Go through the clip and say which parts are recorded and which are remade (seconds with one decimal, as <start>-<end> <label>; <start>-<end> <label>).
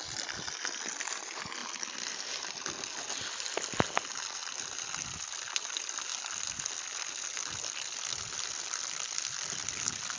0.0-10.2 recorded